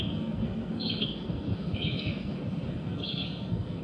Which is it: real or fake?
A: fake